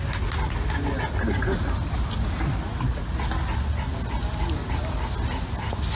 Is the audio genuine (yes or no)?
yes